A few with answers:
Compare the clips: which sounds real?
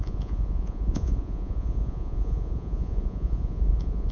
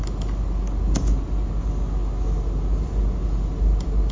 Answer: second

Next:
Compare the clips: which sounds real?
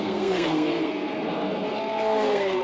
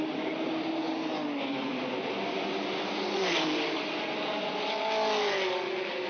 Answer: second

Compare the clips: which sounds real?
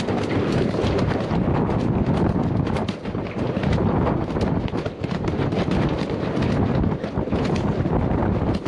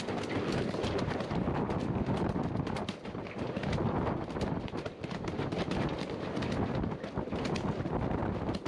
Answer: second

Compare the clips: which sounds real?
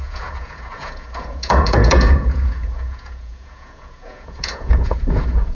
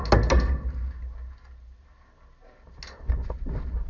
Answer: second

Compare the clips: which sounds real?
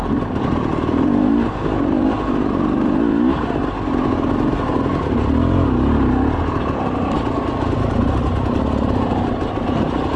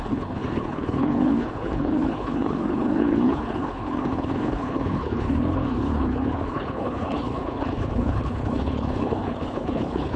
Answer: first